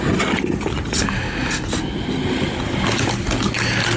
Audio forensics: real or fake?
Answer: real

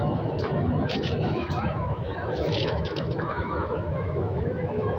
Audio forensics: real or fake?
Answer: fake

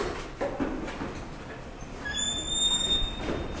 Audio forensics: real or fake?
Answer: real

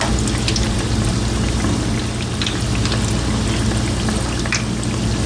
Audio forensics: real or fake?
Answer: real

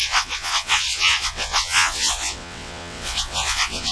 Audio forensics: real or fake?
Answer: fake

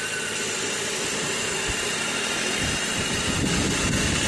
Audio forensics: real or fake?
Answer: real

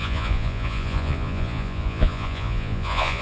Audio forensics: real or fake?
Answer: fake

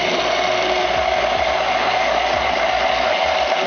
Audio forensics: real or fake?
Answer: real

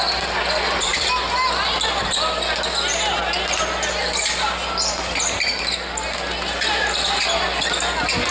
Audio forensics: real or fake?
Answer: real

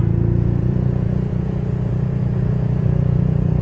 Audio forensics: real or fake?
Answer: fake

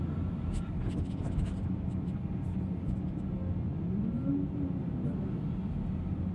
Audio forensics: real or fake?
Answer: real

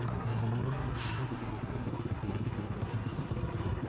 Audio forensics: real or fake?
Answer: fake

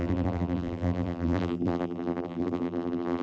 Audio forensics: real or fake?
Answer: fake